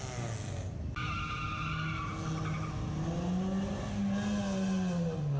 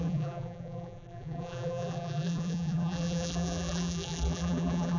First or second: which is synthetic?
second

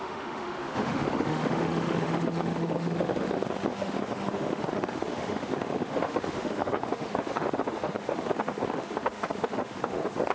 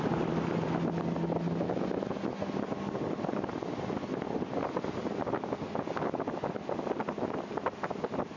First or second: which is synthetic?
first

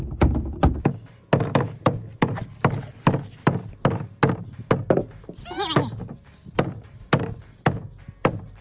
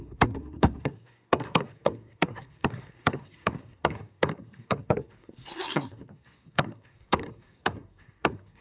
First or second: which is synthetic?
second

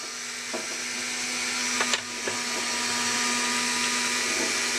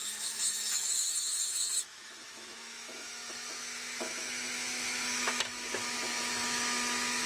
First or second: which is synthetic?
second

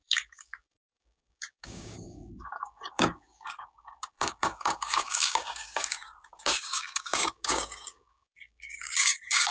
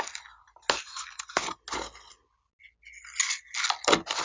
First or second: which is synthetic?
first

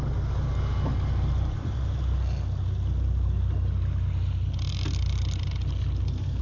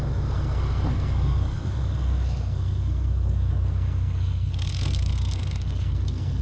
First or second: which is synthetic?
second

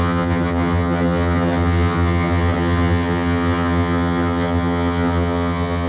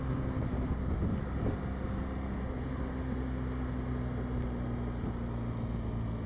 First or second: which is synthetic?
first